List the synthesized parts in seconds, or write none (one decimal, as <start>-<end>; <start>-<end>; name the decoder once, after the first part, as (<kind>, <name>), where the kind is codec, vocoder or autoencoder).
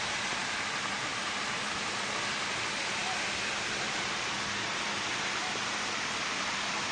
none